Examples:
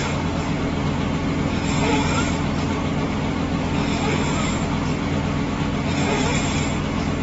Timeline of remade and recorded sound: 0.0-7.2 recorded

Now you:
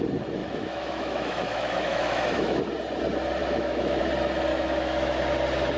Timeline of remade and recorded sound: 0.0-0.4 recorded; 0.4-2.6 remade; 2.6-3.4 recorded; 3.4-4.0 remade; 4.0-4.5 recorded; 4.5-5.2 remade; 5.2-5.8 recorded

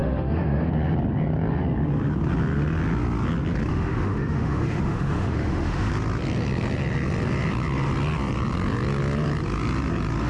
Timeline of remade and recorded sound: 0.0-0.7 remade; 0.7-3.7 recorded; 3.7-5.9 remade; 5.9-10.3 recorded

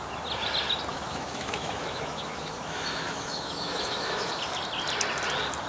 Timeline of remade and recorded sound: 0.0-0.9 recorded; 0.9-4.3 remade; 4.3-5.7 recorded

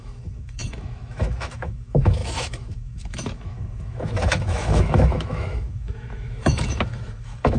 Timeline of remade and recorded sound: 0.0-7.6 remade

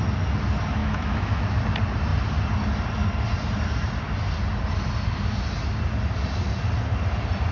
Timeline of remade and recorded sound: 0.0-0.8 recorded; 0.8-1.6 remade; 1.6-7.5 recorded

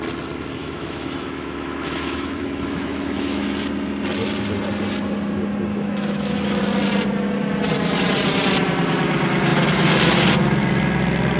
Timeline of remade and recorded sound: 0.0-0.6 recorded; 0.6-3.5 remade; 3.5-5.7 recorded; 5.7-6.6 remade; 6.6-11.4 recorded

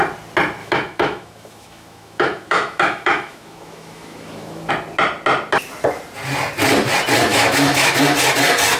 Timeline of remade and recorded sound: 0.0-0.6 recorded; 0.6-4.7 remade; 4.7-7.3 recorded; 7.3-8.0 remade; 8.0-8.8 recorded